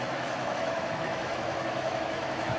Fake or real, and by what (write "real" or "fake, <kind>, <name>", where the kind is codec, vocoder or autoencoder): fake, autoencoder, DAC-VAE